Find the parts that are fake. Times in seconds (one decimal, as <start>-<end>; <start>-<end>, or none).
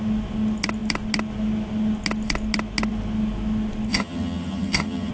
3.9-5.1